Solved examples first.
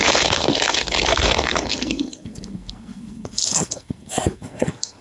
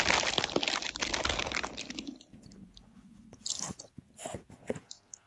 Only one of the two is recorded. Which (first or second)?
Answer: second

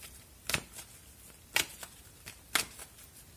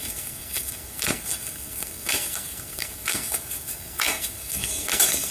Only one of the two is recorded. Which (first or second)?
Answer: first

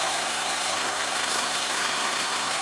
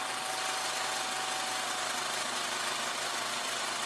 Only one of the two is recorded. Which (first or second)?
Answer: second